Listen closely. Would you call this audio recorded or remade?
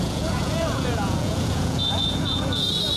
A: remade